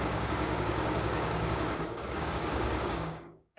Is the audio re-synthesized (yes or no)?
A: yes